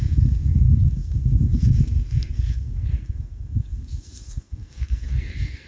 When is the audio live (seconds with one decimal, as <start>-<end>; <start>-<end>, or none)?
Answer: none

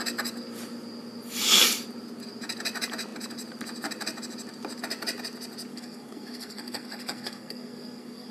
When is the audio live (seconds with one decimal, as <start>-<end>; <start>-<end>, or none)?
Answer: 0.0-5.7